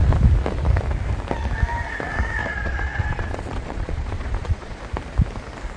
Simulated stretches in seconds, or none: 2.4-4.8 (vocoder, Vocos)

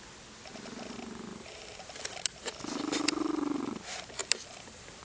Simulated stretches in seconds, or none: 1.3-2.5 (vocoder, BigVGAN v2); 4.2-5.0

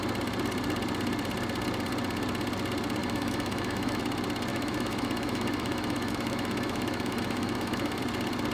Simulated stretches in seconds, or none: 3.0-4.0 (autoencoder, DAC-VAE); 4.5-8.0